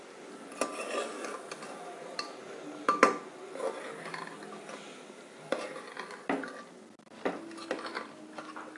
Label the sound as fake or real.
real